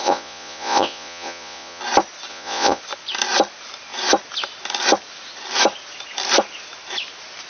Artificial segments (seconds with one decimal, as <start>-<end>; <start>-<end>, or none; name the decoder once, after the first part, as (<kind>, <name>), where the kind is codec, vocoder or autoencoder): 0.0-1.8 (vocoder, Vocos); 2.3-2.8